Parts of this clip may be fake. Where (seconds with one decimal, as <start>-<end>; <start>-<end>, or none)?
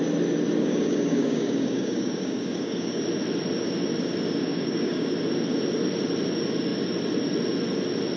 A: 0.6-3.0; 4.4-5.1